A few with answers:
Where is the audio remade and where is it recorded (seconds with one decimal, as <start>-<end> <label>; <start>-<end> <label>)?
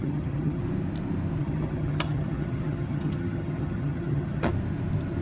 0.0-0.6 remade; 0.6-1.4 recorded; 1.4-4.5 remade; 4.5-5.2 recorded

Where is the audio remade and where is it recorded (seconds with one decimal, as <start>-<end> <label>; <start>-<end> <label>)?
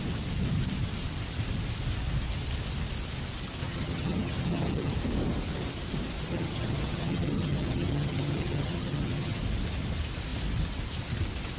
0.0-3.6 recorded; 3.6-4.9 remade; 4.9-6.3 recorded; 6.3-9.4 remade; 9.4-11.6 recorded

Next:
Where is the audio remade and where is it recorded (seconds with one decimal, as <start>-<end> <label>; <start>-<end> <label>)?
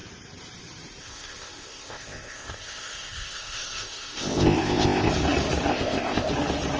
0.0-1.0 recorded; 1.0-5.1 remade; 5.1-5.7 recorded; 5.7-6.3 remade; 6.3-6.8 recorded